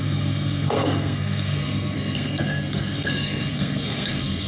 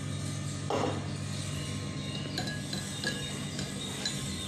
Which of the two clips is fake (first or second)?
first